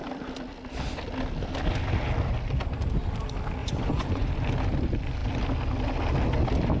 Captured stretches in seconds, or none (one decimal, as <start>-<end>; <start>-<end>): 0.0-3.6; 4.3-6.8